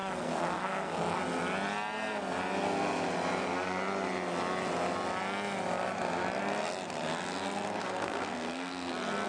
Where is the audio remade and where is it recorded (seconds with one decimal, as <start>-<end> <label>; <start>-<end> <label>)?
0.0-1.2 remade; 1.2-7.8 recorded; 7.8-8.9 remade; 8.9-9.3 recorded